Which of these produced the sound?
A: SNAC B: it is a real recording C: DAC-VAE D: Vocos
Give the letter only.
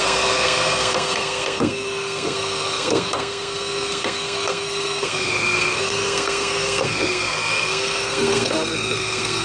A